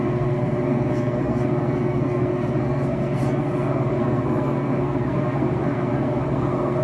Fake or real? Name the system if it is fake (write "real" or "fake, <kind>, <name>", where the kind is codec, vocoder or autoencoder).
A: fake, codec, SNAC